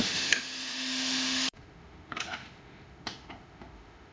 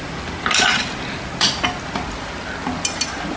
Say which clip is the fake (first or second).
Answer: first